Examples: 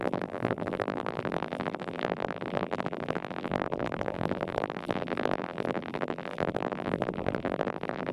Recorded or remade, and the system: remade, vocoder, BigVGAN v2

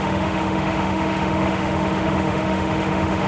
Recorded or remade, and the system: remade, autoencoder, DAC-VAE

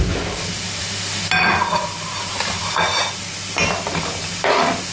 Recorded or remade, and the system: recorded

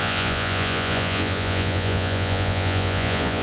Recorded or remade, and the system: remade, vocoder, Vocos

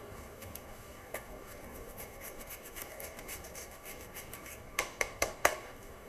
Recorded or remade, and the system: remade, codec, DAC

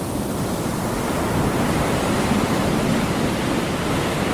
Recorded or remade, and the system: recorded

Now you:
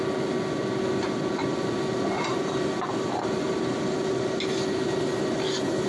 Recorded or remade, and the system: recorded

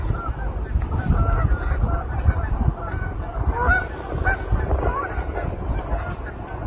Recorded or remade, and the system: recorded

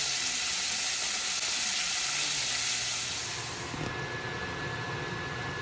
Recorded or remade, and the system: recorded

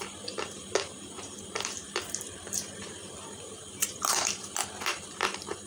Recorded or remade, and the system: remade, vocoder, BigVGAN v2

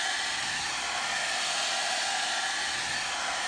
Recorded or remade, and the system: recorded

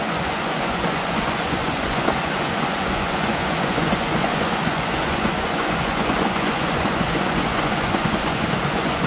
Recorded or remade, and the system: remade, vocoder, Vocos